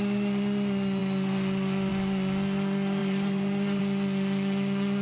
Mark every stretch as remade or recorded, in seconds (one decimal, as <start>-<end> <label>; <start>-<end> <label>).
0.0-3.0 recorded; 3.0-3.8 remade; 3.8-5.0 recorded